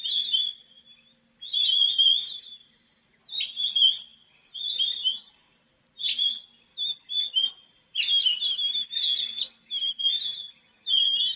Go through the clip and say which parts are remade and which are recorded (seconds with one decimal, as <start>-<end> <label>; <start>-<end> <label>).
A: 0.0-11.4 recorded

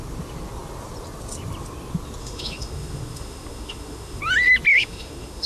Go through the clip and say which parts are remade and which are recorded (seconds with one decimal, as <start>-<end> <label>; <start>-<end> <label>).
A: 0.0-2.2 recorded; 2.2-4.2 remade; 4.2-4.7 recorded; 4.7-5.5 remade

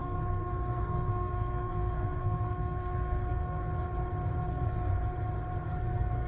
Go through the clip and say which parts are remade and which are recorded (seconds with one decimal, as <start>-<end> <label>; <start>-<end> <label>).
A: 0.0-3.7 remade; 3.7-4.5 recorded; 4.5-4.9 remade; 4.9-5.8 recorded; 5.8-6.3 remade

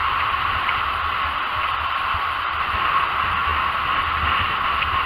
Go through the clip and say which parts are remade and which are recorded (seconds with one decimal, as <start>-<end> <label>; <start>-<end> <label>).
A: 0.0-3.5 remade; 3.5-4.4 recorded; 4.4-5.1 remade

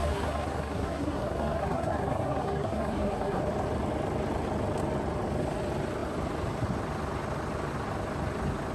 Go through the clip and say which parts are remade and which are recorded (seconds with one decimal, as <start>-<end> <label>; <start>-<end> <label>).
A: 0.0-3.4 remade; 3.4-8.7 recorded